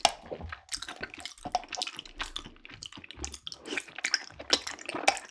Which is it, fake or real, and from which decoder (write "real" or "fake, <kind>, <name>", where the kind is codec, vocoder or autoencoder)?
real